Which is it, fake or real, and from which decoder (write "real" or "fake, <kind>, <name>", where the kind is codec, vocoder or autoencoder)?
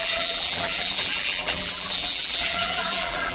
fake, vocoder, BigVGAN v2